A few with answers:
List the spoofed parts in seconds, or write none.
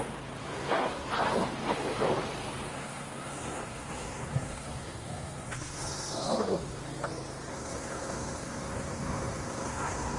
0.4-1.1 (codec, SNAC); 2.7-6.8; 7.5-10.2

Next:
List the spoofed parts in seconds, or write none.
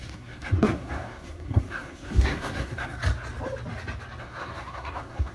0.0-3.0 (codec, SNAC); 4.2-5.3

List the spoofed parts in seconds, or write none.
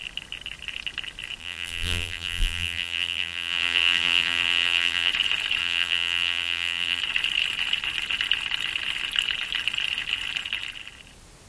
1.4-5.1 (vocoder, BigVGAN v2); 5.6-7.0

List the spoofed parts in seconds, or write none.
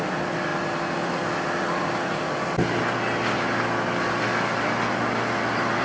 none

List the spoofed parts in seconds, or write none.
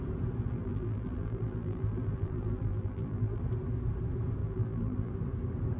0.4-3.4 (vocoder, BigVGAN v2); 4.4-5.1